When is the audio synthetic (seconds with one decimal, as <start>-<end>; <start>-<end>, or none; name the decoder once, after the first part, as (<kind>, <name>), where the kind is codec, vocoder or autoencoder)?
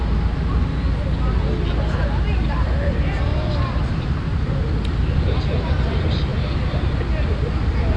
3.3-4.6 (vocoder, BigVGAN v2)